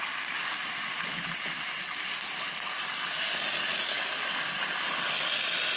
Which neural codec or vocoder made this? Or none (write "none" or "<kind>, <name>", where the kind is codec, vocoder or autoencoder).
none